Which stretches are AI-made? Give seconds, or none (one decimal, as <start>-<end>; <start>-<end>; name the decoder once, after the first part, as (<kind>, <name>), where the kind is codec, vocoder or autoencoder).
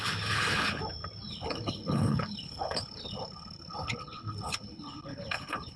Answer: 0.0-0.8 (codec, HILCodec); 1.3-5.8